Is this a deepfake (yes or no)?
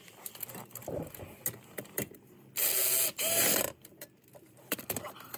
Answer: no